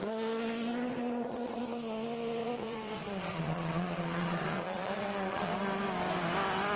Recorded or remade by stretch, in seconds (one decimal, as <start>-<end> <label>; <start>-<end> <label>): 0.0-0.9 recorded; 0.9-1.6 remade; 1.6-2.4 recorded; 2.4-5.5 remade; 5.5-6.8 recorded